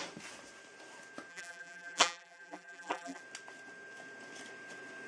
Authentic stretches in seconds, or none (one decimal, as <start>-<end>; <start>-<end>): 0.0-1.3; 3.2-5.1